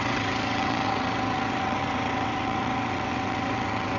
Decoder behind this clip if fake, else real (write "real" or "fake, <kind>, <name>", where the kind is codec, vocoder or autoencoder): fake, vocoder, WaveNeXt